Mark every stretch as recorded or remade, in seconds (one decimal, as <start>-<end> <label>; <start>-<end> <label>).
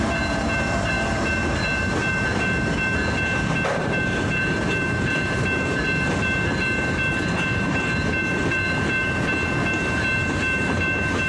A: 0.0-3.0 remade; 3.0-3.7 recorded; 3.7-11.3 remade